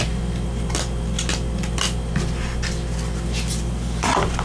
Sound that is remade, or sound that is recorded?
recorded